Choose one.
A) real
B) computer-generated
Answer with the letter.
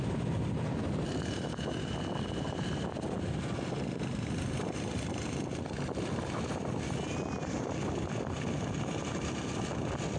A